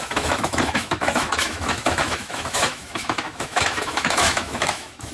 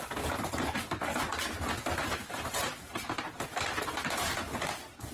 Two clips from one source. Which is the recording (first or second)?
second